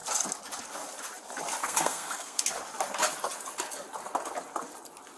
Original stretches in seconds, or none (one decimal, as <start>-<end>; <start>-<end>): 0.0-1.6; 2.4-5.2